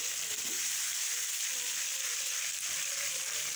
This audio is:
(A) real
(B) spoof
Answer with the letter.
B